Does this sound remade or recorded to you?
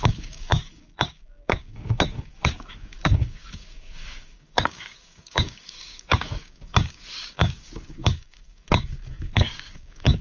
remade